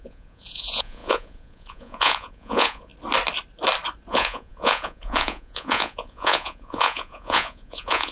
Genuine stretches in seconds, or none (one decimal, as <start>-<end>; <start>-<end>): 2.9-4.1